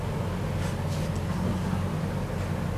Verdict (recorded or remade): recorded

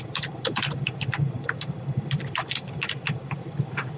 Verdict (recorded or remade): remade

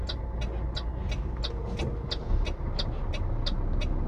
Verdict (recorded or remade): recorded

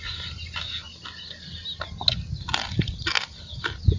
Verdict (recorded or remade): recorded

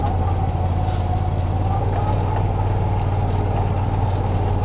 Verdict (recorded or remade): recorded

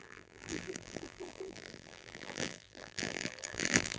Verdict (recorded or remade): remade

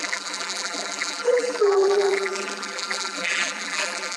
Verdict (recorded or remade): remade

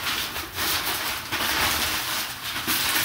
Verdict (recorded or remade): recorded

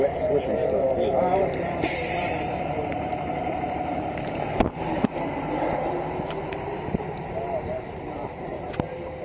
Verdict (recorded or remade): remade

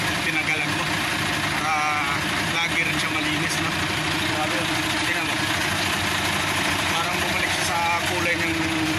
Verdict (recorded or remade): recorded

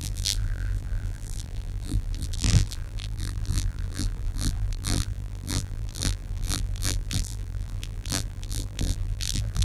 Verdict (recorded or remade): remade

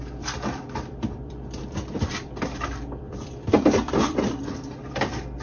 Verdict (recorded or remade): remade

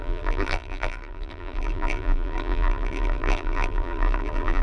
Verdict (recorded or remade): remade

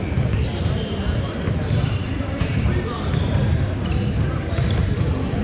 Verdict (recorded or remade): remade